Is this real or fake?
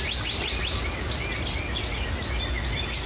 real